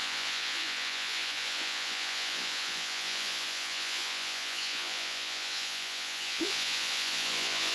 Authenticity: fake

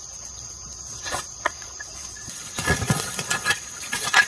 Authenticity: fake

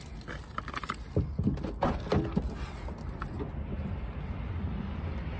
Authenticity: real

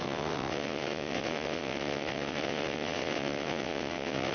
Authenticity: fake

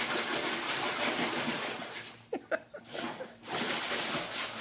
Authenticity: real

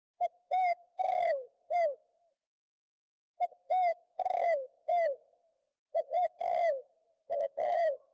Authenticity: fake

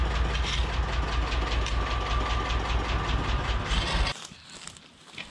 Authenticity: real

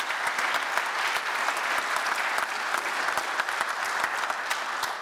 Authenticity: real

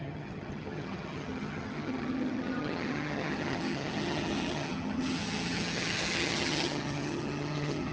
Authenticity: fake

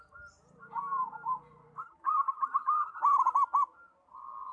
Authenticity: real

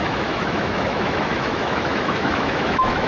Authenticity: fake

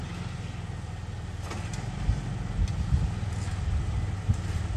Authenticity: real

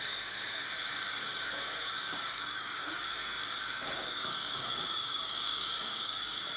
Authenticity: fake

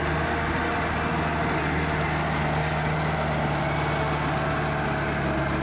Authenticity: real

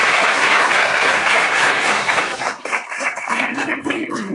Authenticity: fake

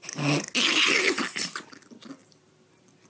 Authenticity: real